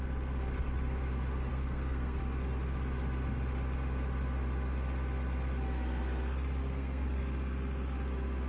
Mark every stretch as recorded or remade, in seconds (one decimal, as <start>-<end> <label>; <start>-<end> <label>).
0.0-1.5 recorded; 1.5-2.2 remade; 2.2-6.6 recorded; 6.6-7.2 remade; 7.2-8.5 recorded